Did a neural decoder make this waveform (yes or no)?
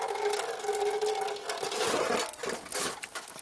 yes